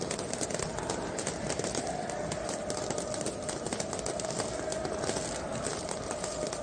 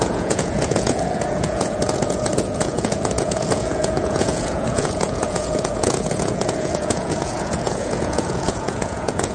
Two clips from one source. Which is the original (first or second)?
first